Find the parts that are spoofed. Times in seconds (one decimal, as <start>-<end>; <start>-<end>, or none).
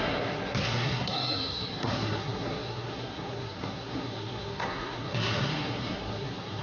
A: 0.0-6.6